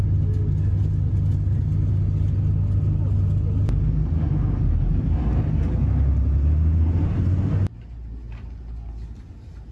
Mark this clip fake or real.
real